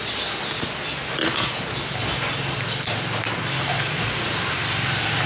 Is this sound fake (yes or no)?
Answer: no